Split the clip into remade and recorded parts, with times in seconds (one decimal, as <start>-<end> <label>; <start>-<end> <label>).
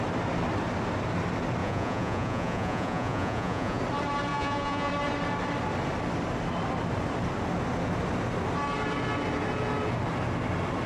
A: 0.0-1.6 recorded; 1.6-3.8 remade; 3.8-4.3 recorded; 4.3-4.9 remade; 4.9-10.9 recorded